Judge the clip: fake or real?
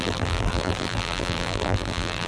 fake